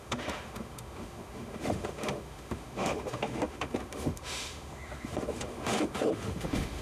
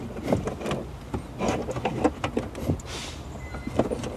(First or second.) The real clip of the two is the second